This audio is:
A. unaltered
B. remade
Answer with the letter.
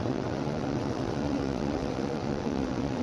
B